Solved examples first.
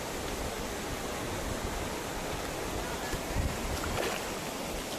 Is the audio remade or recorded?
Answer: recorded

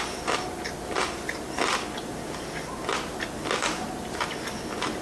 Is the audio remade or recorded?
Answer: recorded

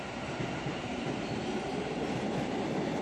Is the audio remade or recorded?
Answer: recorded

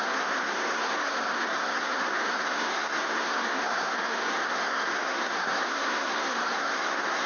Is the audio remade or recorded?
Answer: remade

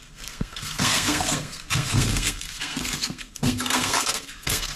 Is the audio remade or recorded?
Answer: remade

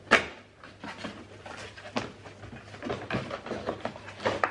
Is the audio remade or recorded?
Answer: recorded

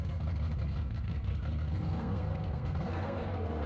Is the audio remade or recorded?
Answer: remade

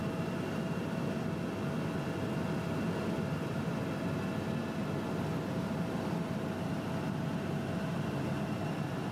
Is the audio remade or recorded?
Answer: recorded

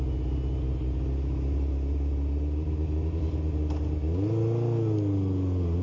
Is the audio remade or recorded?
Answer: recorded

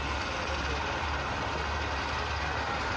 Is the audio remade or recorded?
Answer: recorded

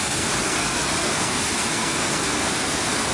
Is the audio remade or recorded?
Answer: remade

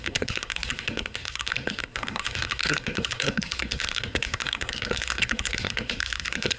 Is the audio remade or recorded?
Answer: remade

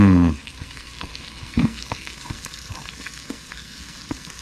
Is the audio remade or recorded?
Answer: remade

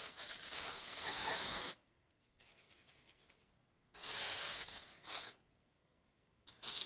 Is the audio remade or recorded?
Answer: remade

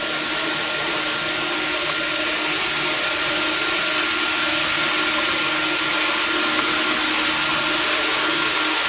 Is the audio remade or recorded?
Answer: recorded